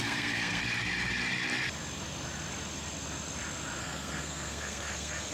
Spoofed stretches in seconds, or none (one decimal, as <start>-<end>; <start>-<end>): 0.0-0.6; 3.8-5.3